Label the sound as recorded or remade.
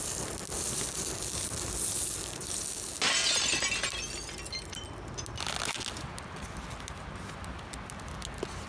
recorded